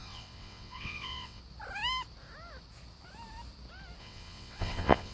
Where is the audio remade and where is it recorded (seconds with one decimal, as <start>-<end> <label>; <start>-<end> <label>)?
0.0-1.4 remade; 1.4-4.0 recorded; 4.0-5.1 remade